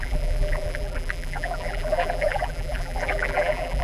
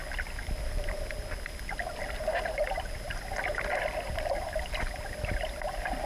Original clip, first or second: second